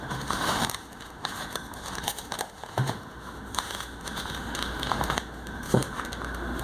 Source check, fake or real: fake